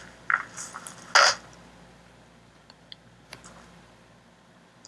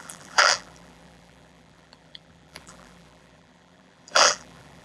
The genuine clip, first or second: first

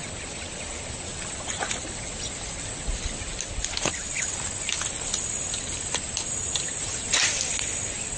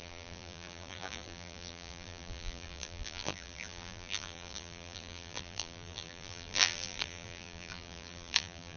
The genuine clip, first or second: first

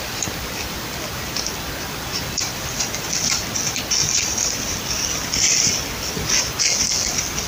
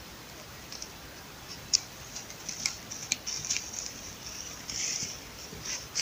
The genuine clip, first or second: first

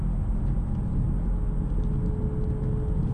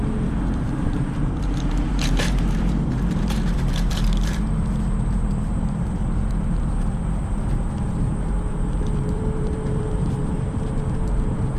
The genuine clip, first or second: first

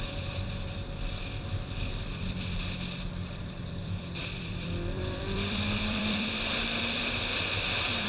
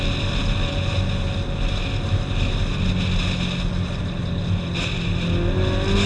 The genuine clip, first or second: second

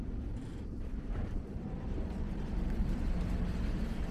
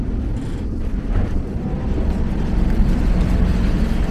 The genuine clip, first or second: second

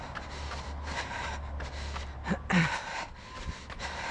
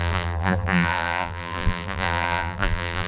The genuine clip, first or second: first